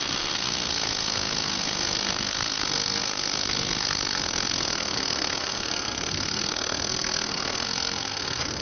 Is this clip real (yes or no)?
no